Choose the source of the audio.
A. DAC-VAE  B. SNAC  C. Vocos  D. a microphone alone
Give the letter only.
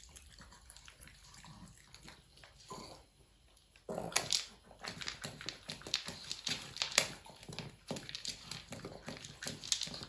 D